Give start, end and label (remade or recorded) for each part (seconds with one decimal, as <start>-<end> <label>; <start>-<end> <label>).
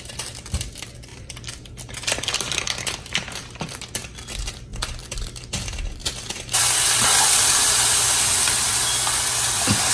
0.0-1.1 recorded; 1.1-3.8 remade; 3.8-6.0 recorded; 6.0-8.5 remade; 8.5-9.9 recorded